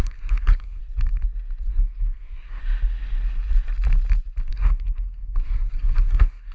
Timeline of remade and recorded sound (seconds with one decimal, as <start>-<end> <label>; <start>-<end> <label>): 0.0-0.8 remade; 0.8-1.7 recorded; 1.7-2.6 remade; 2.6-4.5 recorded; 4.5-6.5 remade